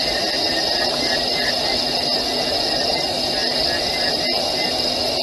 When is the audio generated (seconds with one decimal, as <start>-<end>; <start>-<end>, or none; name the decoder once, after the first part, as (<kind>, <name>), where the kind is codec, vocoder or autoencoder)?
none